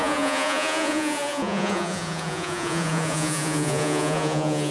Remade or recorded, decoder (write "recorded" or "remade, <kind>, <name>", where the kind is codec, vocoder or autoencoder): remade, vocoder, Vocos